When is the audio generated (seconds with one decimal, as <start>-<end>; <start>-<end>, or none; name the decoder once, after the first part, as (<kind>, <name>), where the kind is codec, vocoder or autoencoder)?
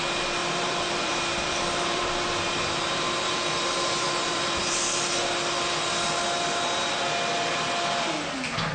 0.4-4.7 (vocoder, BigVGAN v2)